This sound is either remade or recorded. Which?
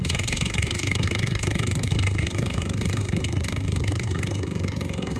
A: remade